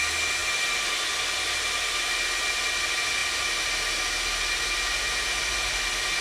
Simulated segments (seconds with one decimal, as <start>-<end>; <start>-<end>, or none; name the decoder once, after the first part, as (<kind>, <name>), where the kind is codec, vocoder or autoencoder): none